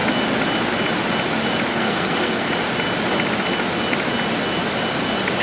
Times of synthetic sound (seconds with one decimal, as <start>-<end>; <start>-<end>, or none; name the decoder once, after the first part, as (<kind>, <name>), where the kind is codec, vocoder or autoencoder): 1.7-2.5 (codec, SNAC)